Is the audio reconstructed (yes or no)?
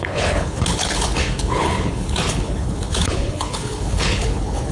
yes